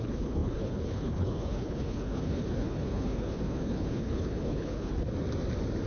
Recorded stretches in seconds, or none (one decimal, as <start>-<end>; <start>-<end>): 5.1-5.9

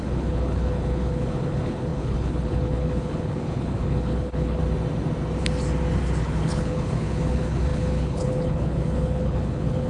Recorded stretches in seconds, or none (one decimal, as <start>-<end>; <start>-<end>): 4.6-6.2

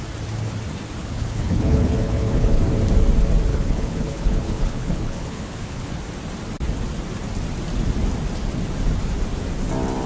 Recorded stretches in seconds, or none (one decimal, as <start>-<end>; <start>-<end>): 0.0-1.0; 2.6-3.5; 5.9-10.1

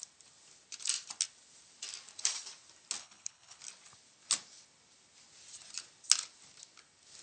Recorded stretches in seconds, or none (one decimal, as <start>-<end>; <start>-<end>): 0.0-3.0; 3.6-7.2